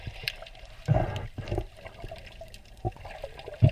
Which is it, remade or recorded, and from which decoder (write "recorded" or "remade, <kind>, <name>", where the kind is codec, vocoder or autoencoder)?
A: recorded